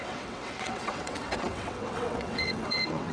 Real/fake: fake